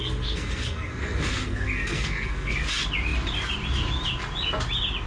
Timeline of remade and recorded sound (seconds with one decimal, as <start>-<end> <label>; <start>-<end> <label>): 0.0-2.5 remade; 2.5-5.1 recorded